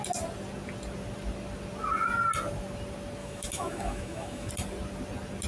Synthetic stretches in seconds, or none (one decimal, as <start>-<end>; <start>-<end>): 3.2-4.5